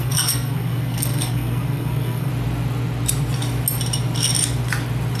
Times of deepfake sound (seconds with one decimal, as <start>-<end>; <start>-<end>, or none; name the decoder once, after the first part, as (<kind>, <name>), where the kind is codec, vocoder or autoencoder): 0.0-2.3 (codec, SNAC)